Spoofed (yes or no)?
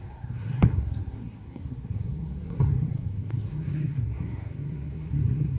yes